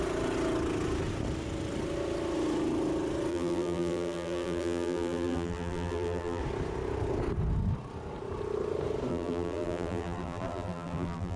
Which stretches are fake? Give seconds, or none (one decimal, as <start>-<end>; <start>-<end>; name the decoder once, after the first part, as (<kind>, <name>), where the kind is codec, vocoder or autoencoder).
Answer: 3.3-6.4 (vocoder, BigVGAN v2); 9.1-11.4